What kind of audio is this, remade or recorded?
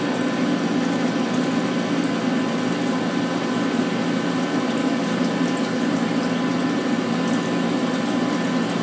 recorded